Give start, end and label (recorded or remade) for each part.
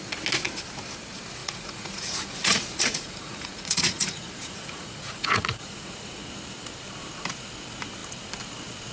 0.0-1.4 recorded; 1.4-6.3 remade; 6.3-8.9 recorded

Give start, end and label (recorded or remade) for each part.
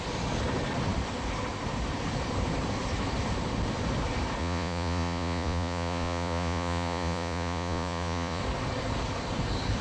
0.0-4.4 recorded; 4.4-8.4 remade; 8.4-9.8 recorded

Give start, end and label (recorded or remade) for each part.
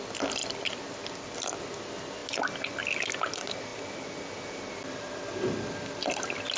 0.0-6.6 recorded